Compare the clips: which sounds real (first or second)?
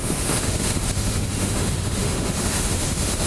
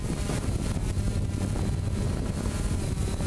second